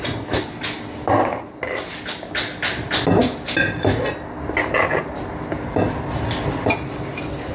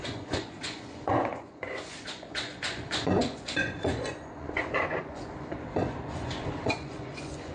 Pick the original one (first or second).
first